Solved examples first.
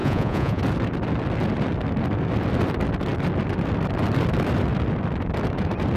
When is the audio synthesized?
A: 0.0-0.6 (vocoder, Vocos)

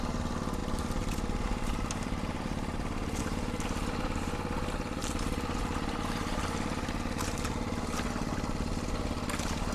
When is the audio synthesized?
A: 0.6-3.2 (vocoder, BigVGAN v2)